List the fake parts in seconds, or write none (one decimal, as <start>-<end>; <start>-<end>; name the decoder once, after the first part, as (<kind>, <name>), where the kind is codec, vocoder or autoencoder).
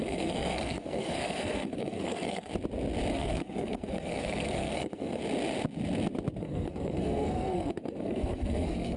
0.0-2.5 (codec, SNAC); 3.1-5.2; 6.4-9.0